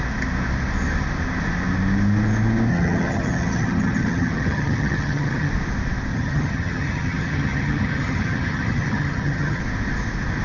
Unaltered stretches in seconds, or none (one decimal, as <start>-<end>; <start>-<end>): 0.0-2.7; 5.5-6.1; 9.6-10.4